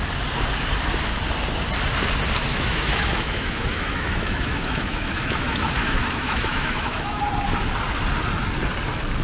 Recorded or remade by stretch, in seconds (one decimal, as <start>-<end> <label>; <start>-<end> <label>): 0.0-2.5 recorded; 2.5-7.2 remade; 7.2-9.2 recorded